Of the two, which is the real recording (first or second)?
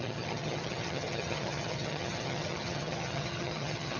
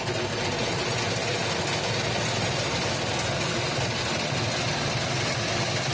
second